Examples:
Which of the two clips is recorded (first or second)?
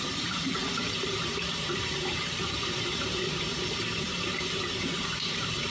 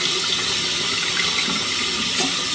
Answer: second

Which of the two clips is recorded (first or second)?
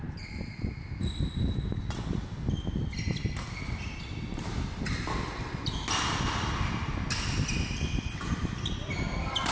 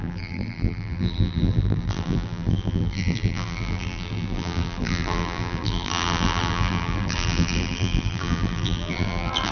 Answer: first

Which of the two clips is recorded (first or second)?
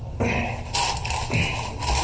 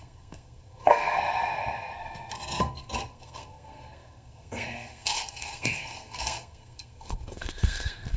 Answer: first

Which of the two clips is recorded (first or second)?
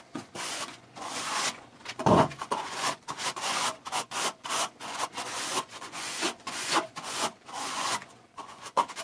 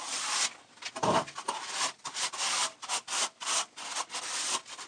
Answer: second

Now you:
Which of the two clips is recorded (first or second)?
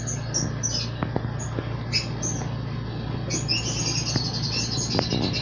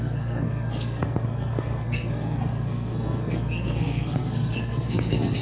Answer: first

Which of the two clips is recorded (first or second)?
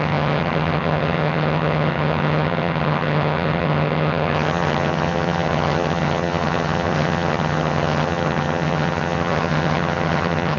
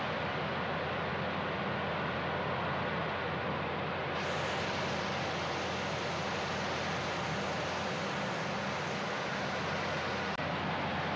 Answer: second